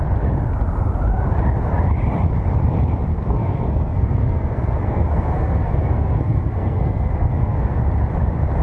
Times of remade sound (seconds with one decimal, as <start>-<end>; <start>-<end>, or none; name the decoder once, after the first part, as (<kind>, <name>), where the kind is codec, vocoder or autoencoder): 3.1-7.8 (codec, SNAC)

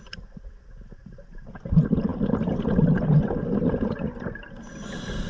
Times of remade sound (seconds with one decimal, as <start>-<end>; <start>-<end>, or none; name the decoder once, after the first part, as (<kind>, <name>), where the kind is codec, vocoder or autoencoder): none

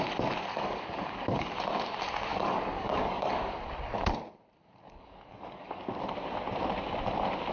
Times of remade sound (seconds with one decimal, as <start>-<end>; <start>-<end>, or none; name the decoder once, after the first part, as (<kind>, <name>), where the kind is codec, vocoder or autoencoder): 0.5-1.5 (codec, DAC); 2.3-4.0; 4.6-5.9

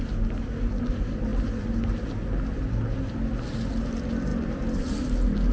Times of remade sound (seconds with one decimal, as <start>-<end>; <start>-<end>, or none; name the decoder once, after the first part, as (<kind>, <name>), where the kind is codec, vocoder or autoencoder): none

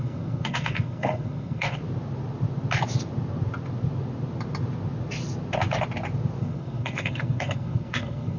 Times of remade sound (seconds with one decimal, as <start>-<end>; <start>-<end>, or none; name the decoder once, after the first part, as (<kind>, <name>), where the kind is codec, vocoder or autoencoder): 0.0-1.8 (codec, SNAC); 6.4-8.4

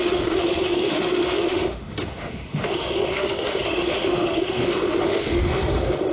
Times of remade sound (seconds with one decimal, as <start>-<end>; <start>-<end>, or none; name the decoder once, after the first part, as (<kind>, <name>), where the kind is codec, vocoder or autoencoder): 0.0-6.1 (autoencoder, DAC-VAE)

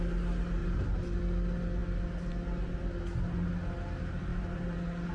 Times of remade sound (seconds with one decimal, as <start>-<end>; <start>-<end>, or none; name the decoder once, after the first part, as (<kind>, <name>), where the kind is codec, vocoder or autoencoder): 0.6-1.2 (vocoder, BigVGAN v2); 4.3-5.1